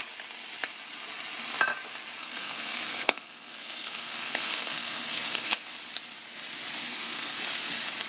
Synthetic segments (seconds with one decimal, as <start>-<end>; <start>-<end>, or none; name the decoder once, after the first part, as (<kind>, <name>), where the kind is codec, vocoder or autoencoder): 2.2-5.6 (codec, SNAC); 6.8-7.4